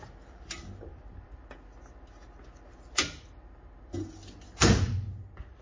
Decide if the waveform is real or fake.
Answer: real